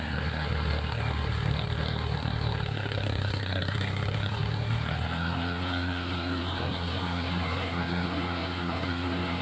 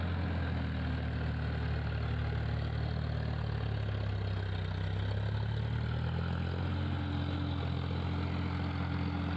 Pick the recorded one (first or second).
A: second